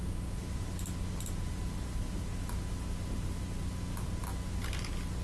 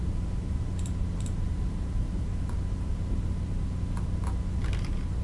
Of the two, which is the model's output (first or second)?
second